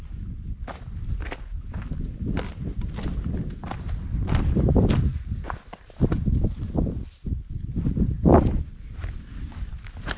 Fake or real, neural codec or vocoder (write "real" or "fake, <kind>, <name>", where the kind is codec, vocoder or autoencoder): real